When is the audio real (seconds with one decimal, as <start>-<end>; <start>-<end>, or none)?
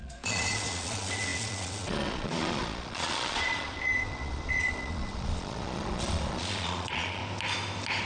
7.2-8.1